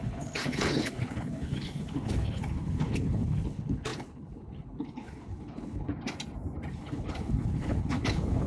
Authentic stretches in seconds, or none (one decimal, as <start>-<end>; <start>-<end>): 5.9-6.7

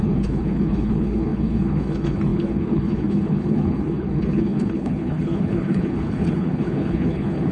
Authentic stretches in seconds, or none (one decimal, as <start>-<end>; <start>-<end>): none